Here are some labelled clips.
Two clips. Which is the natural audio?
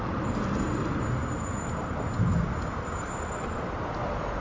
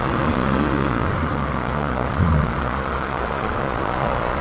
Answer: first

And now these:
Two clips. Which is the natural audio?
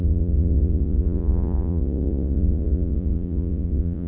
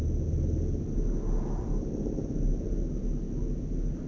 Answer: second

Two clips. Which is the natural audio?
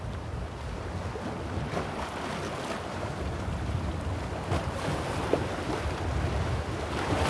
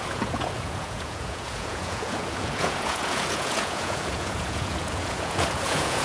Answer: first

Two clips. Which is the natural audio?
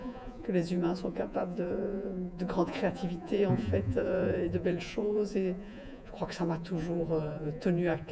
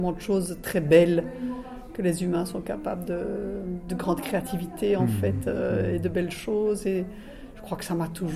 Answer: second